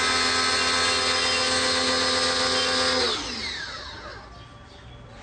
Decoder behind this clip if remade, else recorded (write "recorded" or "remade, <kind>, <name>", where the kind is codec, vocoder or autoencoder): recorded